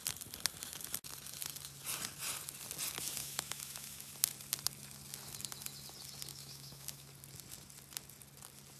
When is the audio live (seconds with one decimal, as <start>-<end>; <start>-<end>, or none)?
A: 0.0-3.2; 4.1-6.3; 7.1-8.8